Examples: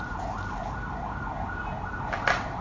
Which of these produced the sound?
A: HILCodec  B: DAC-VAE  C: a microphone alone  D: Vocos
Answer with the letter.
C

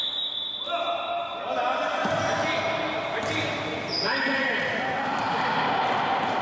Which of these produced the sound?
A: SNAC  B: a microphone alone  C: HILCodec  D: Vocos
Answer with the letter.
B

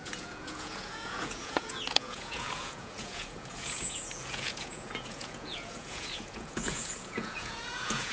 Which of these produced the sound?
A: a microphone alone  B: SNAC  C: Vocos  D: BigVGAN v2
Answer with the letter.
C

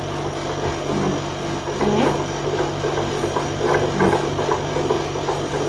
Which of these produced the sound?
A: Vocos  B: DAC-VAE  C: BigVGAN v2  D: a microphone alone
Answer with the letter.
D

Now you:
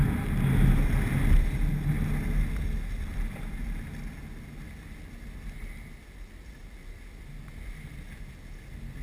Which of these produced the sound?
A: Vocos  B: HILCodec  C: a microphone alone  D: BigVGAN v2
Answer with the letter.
C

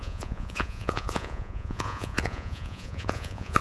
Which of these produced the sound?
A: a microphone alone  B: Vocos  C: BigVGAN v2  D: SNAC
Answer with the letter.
B